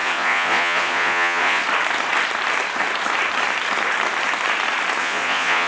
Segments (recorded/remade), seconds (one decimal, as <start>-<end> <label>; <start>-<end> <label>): 0.0-1.6 remade; 1.6-5.0 recorded; 5.0-5.7 remade